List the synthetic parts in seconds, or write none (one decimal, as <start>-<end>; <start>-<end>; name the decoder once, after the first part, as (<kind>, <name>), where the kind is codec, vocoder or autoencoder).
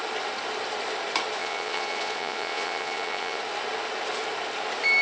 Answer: 1.4-3.4 (vocoder, Vocos)